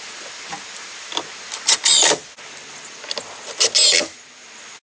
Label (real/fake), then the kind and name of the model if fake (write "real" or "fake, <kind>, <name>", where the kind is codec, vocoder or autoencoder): real